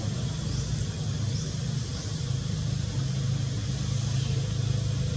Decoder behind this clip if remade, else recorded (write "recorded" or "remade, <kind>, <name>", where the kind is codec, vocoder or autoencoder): recorded